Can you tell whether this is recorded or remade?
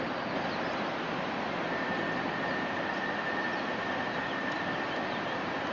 recorded